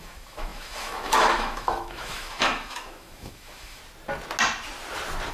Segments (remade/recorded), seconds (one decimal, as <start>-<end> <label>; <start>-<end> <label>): 0.0-3.8 remade; 3.8-5.3 recorded